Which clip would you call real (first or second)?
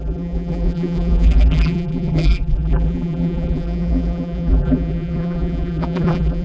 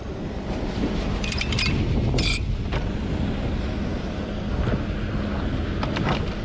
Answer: second